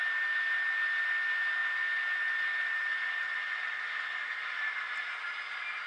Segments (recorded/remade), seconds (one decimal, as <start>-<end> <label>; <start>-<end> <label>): 0.0-5.9 recorded